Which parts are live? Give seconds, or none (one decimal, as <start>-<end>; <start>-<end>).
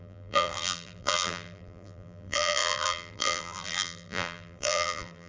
none